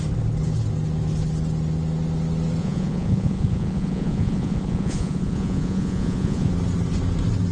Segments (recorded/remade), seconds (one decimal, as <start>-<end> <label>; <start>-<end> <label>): 0.0-2.6 recorded; 2.6-6.5 remade; 6.5-7.5 recorded